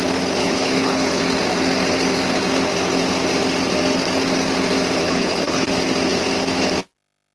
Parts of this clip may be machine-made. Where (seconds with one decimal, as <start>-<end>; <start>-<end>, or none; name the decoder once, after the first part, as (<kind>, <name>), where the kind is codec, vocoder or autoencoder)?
0.4-1.2 (codec, HILCodec); 5.0-5.7